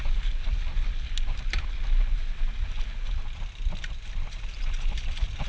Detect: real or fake real